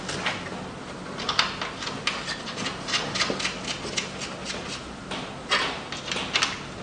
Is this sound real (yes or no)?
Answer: yes